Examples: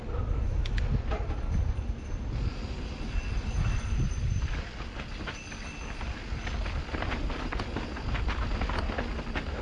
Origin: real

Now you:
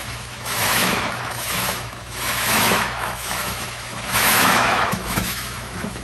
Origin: fake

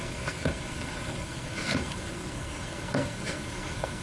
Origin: fake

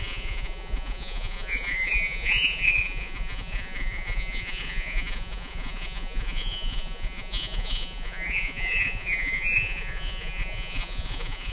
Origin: fake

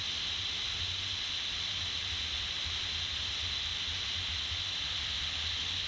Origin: real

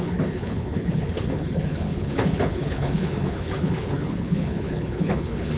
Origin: fake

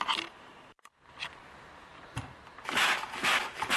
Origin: real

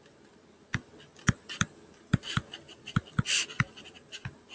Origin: fake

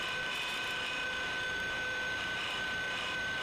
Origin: fake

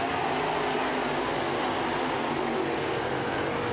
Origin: real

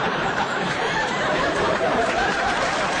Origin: fake